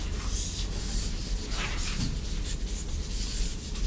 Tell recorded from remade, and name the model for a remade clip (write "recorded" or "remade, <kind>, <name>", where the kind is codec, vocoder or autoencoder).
recorded